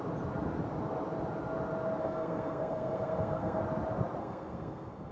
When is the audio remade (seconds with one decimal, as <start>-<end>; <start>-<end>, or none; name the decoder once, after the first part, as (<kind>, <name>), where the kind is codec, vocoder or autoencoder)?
2.0-3.6 (codec, SNAC); 4.2-5.1